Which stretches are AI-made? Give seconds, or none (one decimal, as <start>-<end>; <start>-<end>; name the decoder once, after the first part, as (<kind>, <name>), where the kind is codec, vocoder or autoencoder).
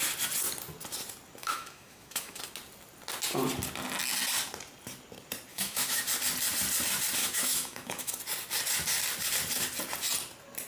1.4-2.4 (autoencoder, DAC-VAE); 5.5-6.0; 7.2-8.2